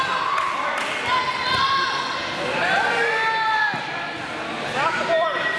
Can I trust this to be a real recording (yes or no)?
yes